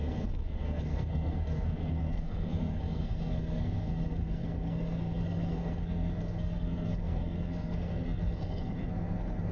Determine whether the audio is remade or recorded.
remade